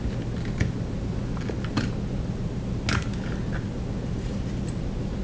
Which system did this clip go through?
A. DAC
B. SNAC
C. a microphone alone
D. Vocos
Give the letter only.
C